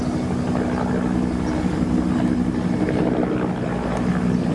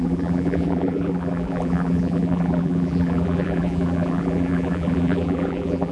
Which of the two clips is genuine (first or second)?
first